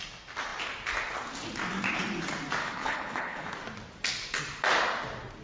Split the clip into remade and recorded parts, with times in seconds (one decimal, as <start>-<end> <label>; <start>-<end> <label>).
0.0-2.6 recorded; 2.6-3.5 remade; 3.5-5.4 recorded